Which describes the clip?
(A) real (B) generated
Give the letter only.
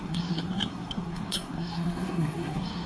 B